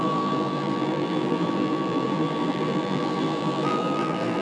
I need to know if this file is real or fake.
fake